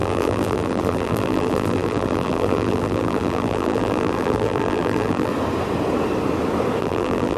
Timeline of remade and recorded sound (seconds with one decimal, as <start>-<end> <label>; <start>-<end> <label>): 0.0-5.3 remade; 5.3-6.8 recorded; 6.8-7.4 remade